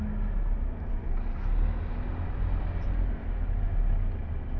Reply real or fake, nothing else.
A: real